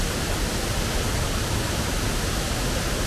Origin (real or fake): real